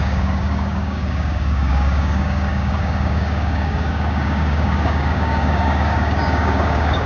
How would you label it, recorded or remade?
remade